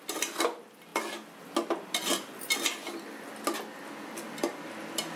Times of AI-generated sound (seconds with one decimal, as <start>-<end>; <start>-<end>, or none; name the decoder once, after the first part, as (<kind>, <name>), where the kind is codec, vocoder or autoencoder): none